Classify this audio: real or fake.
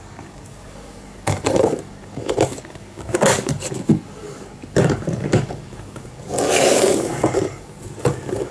fake